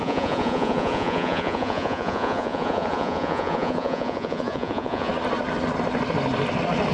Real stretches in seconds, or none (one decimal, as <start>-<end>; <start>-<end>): 5.1-6.9